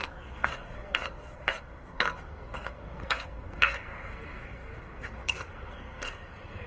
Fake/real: fake